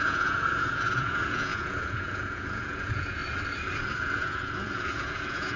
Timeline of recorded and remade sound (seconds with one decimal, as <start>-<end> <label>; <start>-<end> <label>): 0.0-3.2 remade; 3.2-4.0 recorded; 4.0-5.6 remade